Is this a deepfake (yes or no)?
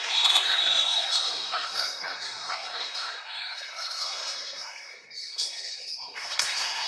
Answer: yes